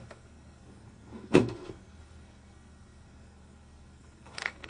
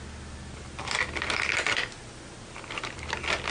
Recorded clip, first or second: second